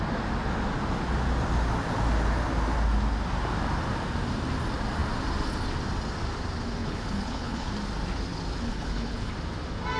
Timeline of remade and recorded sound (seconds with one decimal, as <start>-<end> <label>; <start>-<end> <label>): 0.0-6.8 recorded; 6.8-7.7 remade; 7.7-8.7 recorded; 8.7-9.3 remade; 9.3-10.0 recorded